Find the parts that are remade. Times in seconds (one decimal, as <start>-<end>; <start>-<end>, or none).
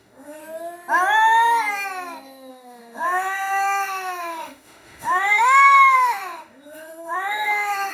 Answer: 0.0-0.4; 2.5-7.9